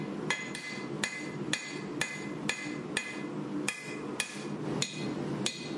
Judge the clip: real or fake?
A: real